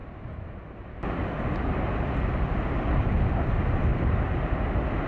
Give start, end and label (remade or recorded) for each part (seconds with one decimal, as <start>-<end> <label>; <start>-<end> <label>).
0.0-3.1 remade; 3.1-5.1 recorded